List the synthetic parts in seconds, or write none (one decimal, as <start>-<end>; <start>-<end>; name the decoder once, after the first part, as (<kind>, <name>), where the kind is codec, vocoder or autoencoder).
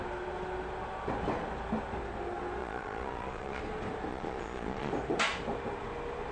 2.6-3.6 (vocoder, Vocos); 4.1-4.9